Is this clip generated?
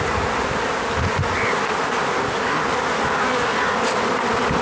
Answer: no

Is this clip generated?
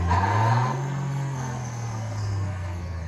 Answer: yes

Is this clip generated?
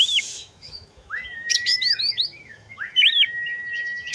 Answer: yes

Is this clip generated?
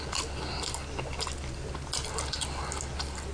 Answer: no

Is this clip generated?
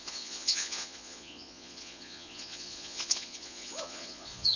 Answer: yes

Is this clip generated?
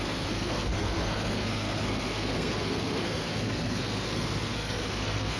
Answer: yes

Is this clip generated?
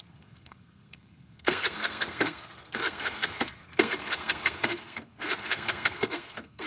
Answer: yes